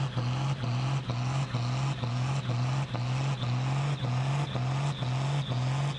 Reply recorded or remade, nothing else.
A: recorded